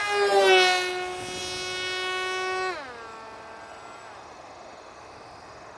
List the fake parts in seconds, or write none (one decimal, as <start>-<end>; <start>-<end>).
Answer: none